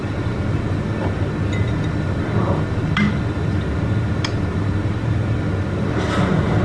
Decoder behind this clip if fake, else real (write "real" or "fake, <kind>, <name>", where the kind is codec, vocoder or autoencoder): real